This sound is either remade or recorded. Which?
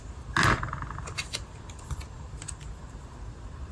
recorded